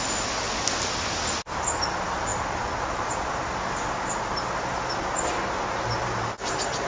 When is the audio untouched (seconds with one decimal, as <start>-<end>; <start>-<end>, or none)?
0.0-6.9